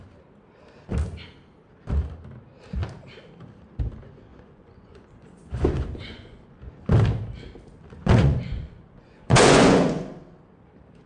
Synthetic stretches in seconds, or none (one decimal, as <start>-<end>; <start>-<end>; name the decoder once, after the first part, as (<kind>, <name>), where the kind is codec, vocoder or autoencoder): 4.3-6.7 (vocoder, Vocos); 8.0-10.1